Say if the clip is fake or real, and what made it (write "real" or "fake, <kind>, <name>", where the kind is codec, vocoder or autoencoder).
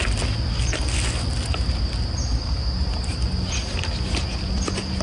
real